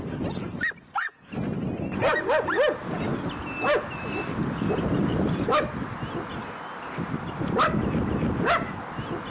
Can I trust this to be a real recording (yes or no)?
yes